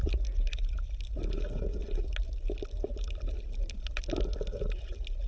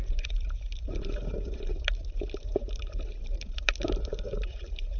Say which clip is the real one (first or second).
first